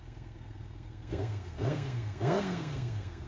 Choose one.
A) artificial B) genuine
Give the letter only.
A